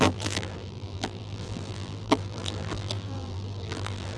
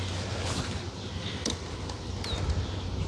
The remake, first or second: first